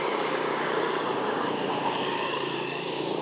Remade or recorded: remade